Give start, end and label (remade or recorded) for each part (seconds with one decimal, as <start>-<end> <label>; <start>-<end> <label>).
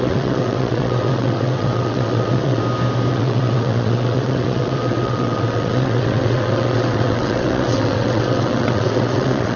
0.0-2.6 remade; 2.6-3.1 recorded; 3.1-9.6 remade